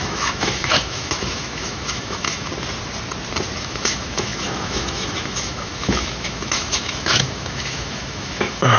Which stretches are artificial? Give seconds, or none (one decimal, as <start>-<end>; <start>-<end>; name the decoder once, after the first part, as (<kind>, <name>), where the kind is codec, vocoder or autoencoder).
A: 0.0-2.5 (autoencoder, DAC-VAE); 3.6-8.8